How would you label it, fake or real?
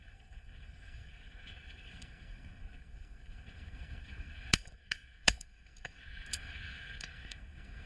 fake